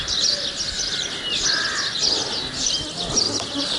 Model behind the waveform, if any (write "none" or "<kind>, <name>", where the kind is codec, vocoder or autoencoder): none